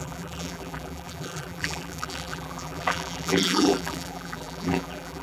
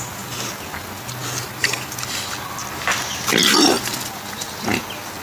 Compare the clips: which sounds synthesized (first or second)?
first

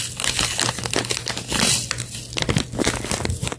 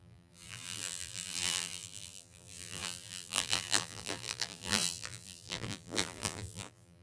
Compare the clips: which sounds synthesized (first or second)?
second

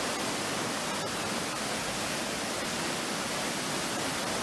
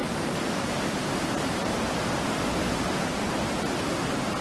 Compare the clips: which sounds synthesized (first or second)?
second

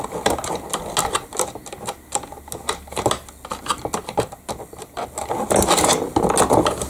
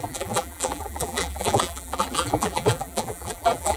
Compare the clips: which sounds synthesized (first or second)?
second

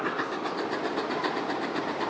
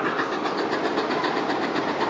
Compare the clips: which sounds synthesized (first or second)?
first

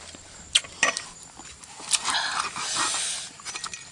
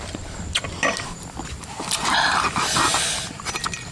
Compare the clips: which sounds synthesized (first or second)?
second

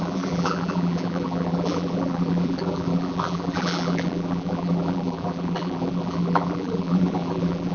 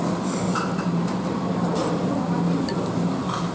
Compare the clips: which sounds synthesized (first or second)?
first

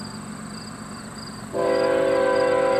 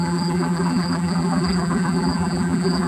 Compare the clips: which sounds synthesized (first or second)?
second